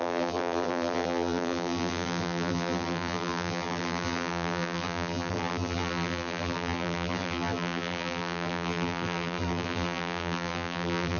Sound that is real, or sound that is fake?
fake